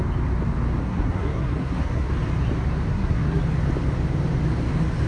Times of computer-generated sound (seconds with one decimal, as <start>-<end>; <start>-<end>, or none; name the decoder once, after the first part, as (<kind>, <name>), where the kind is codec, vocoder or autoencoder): 0.8-2.1 (codec, SNAC); 2.9-3.4